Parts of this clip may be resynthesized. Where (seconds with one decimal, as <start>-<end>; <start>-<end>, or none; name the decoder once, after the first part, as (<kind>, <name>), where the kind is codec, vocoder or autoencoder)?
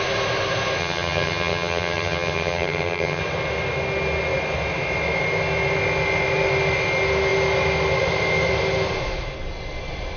0.8-3.2 (vocoder, HiFi-GAN)